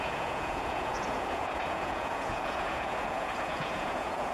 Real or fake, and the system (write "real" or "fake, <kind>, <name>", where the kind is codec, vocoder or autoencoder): fake, vocoder, Vocos